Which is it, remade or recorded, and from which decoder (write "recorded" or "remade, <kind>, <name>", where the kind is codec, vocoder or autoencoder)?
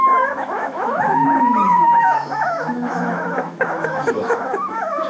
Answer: remade, autoencoder, DAC-VAE